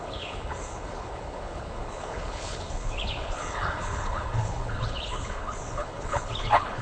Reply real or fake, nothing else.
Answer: fake